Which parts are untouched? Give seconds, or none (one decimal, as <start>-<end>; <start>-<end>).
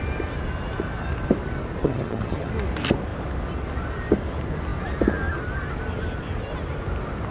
0.0-1.8; 2.5-7.3